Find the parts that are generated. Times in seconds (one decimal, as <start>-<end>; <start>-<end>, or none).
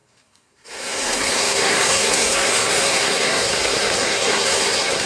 0.0-5.1